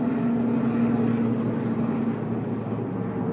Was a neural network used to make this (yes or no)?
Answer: no